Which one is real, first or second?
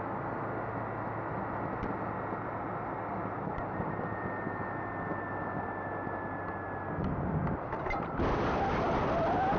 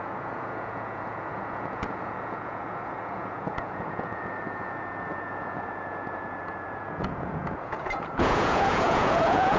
first